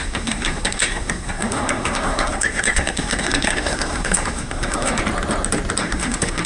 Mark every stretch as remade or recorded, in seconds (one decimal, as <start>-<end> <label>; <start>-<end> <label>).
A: 0.0-5.0 remade; 5.0-5.8 recorded; 5.8-6.5 remade